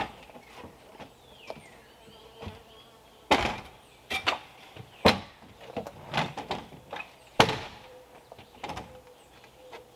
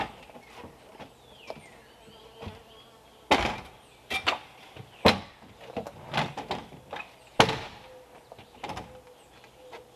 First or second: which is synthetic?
first